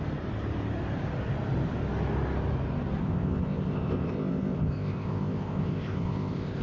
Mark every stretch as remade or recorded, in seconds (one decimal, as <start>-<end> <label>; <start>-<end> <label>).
0.0-3.0 recorded; 3.0-6.6 remade